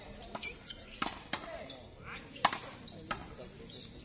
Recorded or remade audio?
recorded